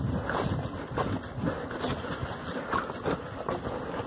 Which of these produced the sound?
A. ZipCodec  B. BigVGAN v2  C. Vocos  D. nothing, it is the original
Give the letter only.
D